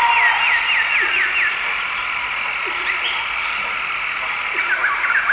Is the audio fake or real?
real